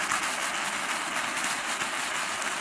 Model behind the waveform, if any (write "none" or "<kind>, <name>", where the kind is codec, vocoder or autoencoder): none